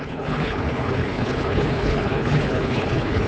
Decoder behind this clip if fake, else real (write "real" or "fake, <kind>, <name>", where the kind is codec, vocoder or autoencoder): fake, codec, HILCodec